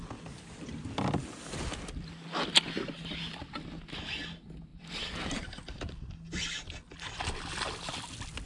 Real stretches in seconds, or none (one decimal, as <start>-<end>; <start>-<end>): 0.0-4.7; 6.1-8.4